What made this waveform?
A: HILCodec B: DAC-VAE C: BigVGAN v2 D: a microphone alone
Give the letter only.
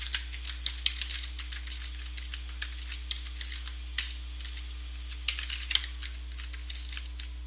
D